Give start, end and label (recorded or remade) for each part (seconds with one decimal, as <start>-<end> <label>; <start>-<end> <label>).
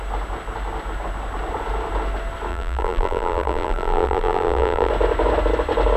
0.0-2.5 recorded; 2.5-4.9 remade; 4.9-6.0 recorded